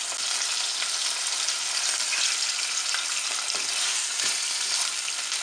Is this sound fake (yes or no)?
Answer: no